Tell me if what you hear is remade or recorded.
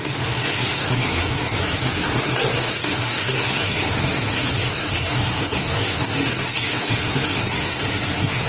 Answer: remade